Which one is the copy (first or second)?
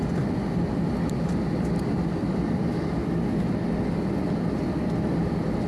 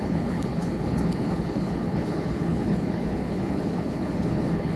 second